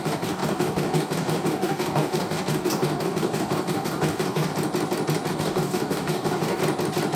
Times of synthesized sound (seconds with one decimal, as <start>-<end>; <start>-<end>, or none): 0.0-4.5; 5.3-6.6